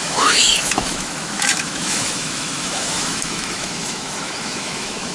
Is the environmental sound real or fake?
fake